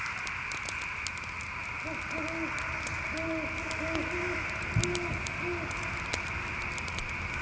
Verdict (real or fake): real